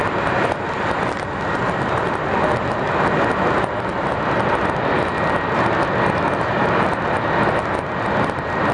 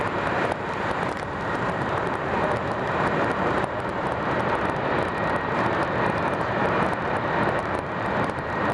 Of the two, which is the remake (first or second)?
second